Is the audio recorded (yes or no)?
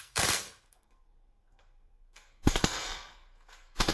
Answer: no